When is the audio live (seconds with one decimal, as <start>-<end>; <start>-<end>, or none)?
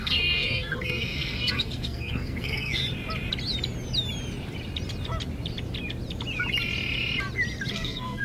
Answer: 2.8-7.7